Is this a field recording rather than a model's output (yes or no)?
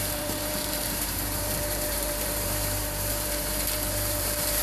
no